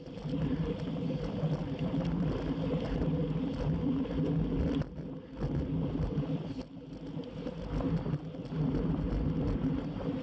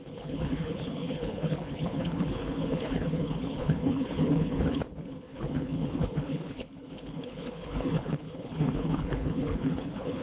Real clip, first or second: first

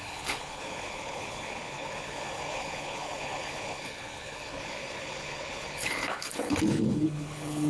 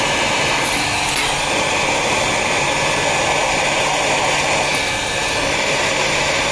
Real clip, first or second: second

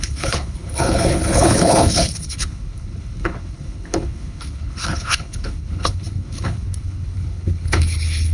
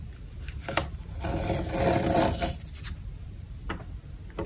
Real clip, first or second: second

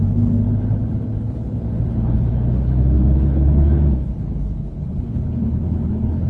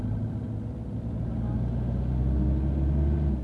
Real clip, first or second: second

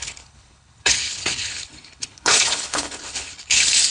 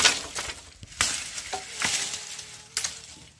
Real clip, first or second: second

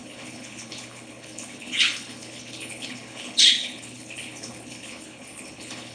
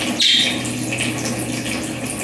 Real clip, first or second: second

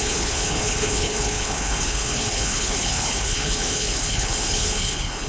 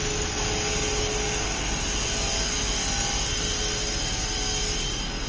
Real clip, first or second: second